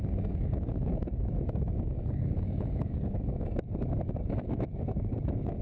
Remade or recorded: remade